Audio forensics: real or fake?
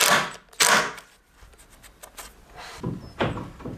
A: real